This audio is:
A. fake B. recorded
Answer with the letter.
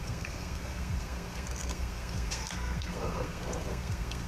A